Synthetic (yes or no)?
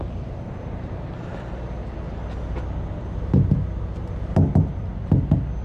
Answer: no